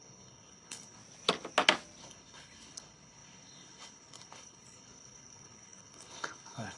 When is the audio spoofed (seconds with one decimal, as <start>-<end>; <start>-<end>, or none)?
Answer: 0.0-1.0; 2.0-6.8